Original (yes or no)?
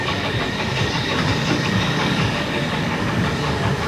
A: no